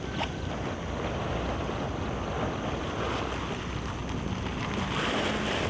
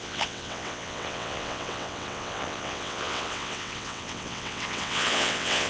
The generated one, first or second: second